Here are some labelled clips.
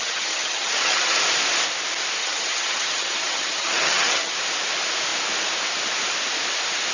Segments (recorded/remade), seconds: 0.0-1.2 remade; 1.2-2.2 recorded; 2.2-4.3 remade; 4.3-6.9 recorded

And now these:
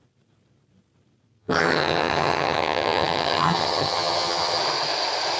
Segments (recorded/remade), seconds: 0.0-1.4 recorded; 1.4-4.6 remade; 4.6-5.4 recorded

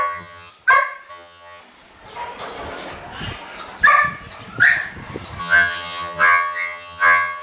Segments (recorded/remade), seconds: 0.0-0.5 remade; 0.5-1.1 recorded; 1.1-1.6 remade; 1.6-5.4 recorded; 5.4-7.4 remade